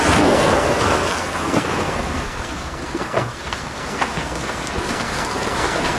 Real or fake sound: fake